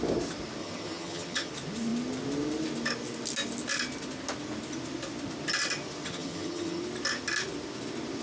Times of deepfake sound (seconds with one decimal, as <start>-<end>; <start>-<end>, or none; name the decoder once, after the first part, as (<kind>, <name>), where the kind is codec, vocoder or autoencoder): 0.6-1.5 (vocoder, HiFi-GAN); 6.1-6.8